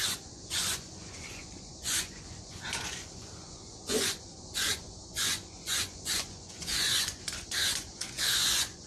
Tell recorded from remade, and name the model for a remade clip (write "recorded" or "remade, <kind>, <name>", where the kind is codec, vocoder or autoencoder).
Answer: remade, vocoder, Vocos